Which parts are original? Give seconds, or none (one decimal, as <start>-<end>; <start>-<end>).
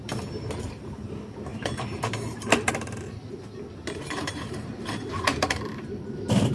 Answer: 3.2-4.1